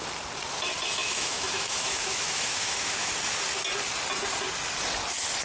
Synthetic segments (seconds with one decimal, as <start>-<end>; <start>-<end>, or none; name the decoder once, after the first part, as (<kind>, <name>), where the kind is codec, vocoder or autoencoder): 1.0-3.1 (autoencoder, DAC-VAE)